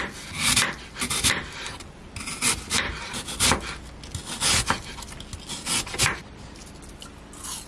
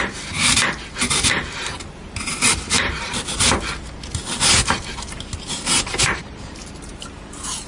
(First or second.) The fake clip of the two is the second